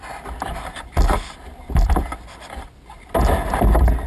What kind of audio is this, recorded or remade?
recorded